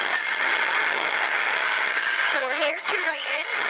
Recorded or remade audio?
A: remade